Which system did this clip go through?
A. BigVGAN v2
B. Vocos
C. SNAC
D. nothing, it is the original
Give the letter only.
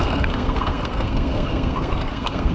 C